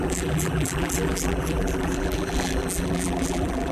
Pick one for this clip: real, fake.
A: fake